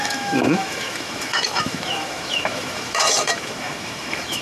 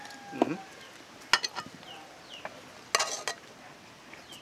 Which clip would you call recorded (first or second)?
second